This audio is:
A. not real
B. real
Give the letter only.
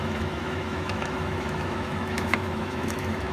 A